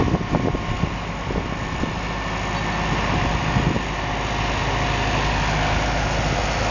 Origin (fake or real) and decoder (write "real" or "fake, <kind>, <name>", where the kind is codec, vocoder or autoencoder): real